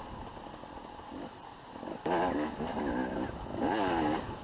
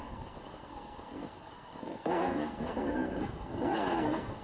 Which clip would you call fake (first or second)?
second